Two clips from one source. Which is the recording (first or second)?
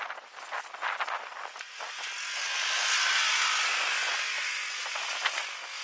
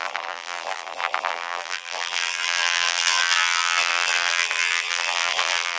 first